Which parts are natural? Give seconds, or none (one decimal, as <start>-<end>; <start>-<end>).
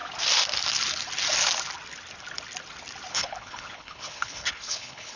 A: 0.0-3.1